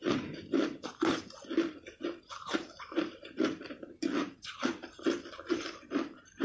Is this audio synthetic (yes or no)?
yes